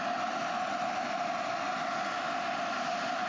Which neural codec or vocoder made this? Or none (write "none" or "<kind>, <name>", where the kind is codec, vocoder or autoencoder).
none